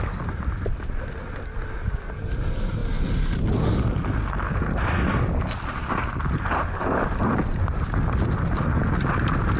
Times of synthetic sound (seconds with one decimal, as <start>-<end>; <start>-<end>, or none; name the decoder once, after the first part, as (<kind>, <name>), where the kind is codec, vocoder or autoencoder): none